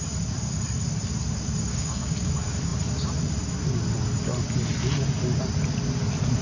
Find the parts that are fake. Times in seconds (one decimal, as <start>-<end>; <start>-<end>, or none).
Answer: 1.7-2.3